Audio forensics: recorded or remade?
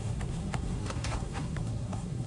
remade